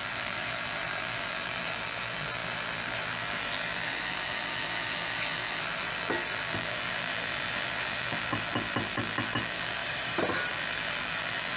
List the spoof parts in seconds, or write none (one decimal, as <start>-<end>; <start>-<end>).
0.0-9.8; 10.5-11.6